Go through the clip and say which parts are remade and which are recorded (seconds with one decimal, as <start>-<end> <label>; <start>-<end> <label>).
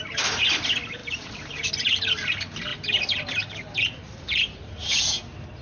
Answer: 0.0-1.0 recorded; 1.0-1.7 remade; 1.7-2.7 recorded; 2.7-5.0 remade; 5.0-5.6 recorded